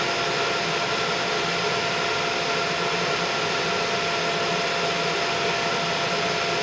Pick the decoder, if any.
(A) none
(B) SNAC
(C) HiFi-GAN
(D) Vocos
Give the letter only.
A